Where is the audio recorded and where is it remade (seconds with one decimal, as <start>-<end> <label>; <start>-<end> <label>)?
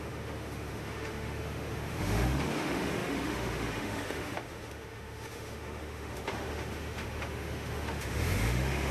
0.0-8.9 remade